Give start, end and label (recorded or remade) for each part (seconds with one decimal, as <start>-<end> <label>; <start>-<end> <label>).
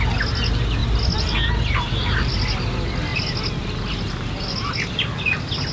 0.0-5.7 recorded